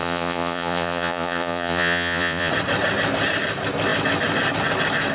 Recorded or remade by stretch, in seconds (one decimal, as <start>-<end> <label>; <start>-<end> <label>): 0.0-2.5 remade; 2.5-5.1 recorded